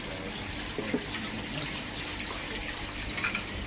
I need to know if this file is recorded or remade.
recorded